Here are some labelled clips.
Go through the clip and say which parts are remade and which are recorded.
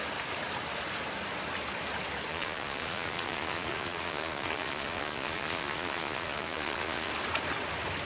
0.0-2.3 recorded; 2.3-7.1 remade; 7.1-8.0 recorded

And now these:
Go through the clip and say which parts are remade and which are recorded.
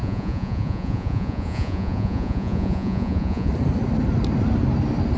0.0-3.5 remade; 3.5-5.2 recorded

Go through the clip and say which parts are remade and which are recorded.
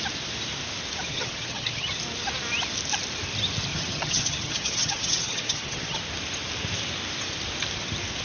0.0-1.1 recorded; 1.1-2.0 remade; 2.0-3.7 recorded; 3.7-6.0 remade; 6.0-8.2 recorded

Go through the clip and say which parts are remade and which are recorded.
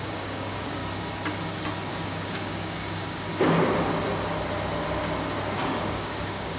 0.0-0.8 remade; 0.8-1.9 recorded; 1.9-3.3 remade; 3.3-5.8 recorded; 5.8-6.6 remade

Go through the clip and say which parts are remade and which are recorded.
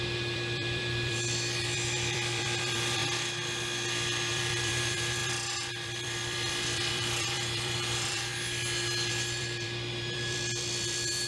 0.0-3.0 remade; 3.0-4.3 recorded; 4.3-8.3 remade; 8.3-9.1 recorded; 9.1-11.3 remade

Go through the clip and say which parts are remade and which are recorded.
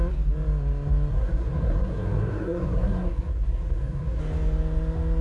0.0-1.1 recorded; 1.1-4.2 remade; 4.2-5.2 recorded